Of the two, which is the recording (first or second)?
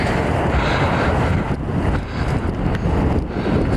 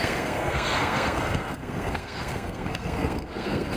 first